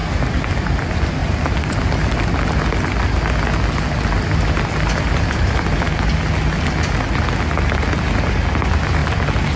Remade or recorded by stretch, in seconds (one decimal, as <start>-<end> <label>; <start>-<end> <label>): 0.0-9.6 recorded